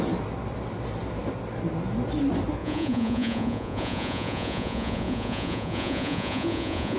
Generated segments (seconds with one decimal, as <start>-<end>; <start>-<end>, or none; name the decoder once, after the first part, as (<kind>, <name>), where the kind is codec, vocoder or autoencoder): 2.6-7.0 (vocoder, Vocos)